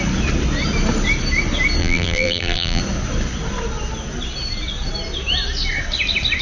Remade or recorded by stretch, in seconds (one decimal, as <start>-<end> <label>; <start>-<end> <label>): 0.0-1.8 recorded; 1.8-2.8 remade; 2.8-6.4 recorded